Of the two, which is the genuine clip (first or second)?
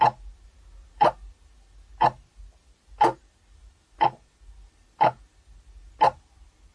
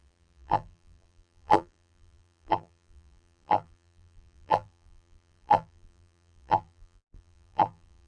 first